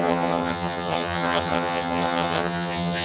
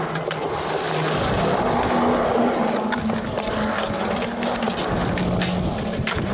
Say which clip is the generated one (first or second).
first